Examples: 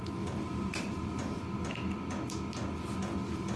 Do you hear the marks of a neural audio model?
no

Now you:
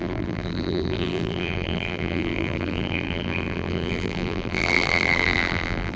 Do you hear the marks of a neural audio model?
yes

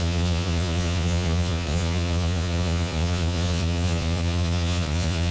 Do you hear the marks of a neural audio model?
yes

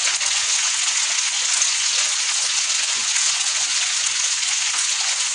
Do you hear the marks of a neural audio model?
yes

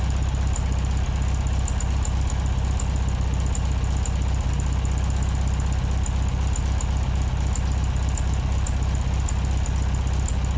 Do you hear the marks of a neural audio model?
no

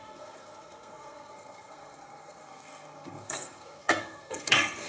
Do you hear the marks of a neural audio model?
yes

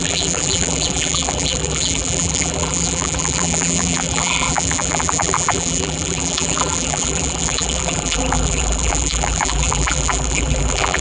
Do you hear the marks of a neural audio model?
yes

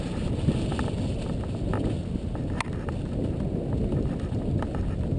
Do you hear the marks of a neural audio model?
no